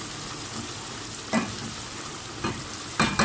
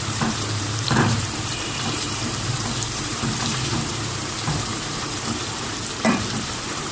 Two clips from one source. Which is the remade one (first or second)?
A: second